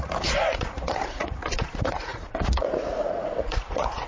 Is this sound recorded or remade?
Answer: remade